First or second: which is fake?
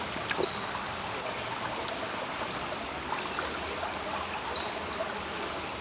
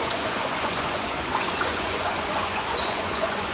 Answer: second